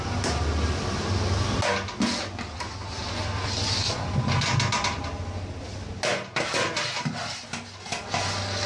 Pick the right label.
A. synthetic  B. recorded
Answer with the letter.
B